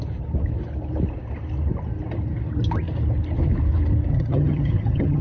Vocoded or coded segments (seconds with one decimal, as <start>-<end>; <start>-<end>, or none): 4.1-5.2